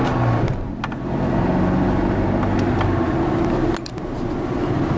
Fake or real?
real